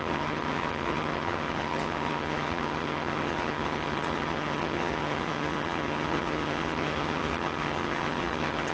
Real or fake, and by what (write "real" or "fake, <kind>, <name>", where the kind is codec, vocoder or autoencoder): fake, vocoder, HiFi-GAN